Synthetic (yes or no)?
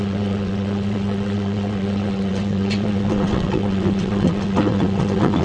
yes